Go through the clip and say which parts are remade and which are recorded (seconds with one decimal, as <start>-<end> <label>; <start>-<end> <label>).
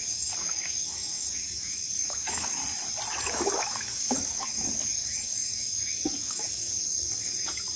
0.0-2.6 remade; 2.6-3.2 recorded; 3.2-7.8 remade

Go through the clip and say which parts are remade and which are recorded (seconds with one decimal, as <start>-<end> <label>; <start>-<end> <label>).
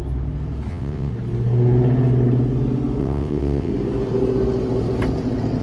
0.0-0.7 recorded; 0.7-1.1 remade; 1.1-3.0 recorded; 3.0-3.7 remade; 3.7-5.6 recorded